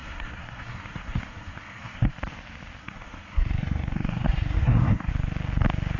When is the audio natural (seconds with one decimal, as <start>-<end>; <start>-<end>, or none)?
2.1-2.8; 5.1-6.0